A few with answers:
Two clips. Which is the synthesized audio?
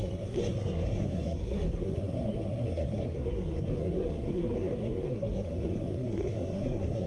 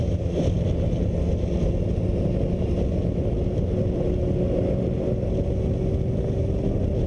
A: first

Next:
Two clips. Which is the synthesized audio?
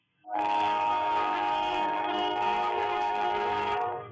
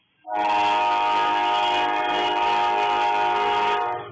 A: first